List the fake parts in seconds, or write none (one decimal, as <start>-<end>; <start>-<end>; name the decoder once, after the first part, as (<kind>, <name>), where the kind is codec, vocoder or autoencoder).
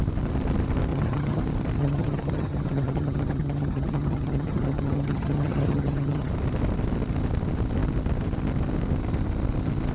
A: 0.9-1.4 (vocoder, HiFi-GAN); 1.8-6.3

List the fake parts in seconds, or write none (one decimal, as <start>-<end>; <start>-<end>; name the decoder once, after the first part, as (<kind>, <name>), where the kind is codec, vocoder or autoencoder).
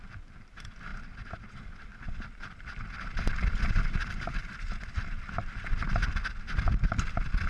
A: 1.9-5.2 (vocoder, BigVGAN v2)